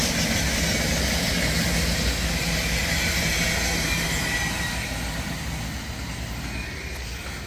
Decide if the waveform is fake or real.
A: real